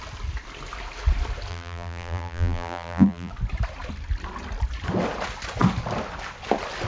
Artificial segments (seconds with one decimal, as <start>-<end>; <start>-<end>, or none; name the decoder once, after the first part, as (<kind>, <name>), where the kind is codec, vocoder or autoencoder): 1.5-3.3 (vocoder, BigVGAN v2)